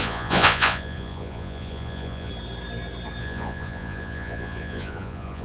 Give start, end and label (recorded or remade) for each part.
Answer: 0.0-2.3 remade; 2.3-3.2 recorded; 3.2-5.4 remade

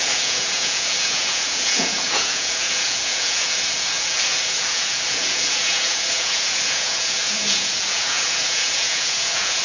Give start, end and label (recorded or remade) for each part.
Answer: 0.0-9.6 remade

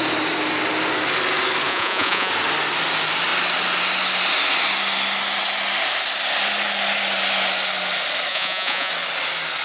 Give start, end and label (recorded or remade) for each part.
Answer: 0.0-1.7 recorded; 1.7-2.3 remade; 2.3-8.3 recorded; 8.3-8.9 remade; 8.9-9.6 recorded

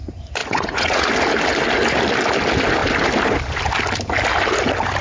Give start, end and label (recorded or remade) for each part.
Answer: 0.0-0.4 recorded; 0.4-1.1 remade; 1.1-5.0 recorded

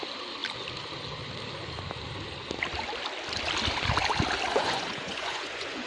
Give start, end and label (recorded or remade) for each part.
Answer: 0.0-4.5 recorded; 4.5-5.9 remade

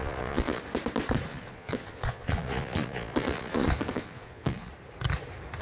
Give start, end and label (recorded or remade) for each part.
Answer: 0.0-0.6 remade; 0.6-1.3 recorded; 1.3-4.7 remade; 4.7-5.6 recorded

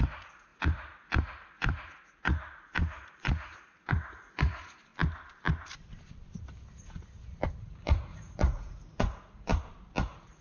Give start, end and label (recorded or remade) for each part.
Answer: 0.0-4.9 remade; 4.9-7.6 recorded; 7.6-9.5 remade; 9.5-10.0 recorded; 10.0-10.4 remade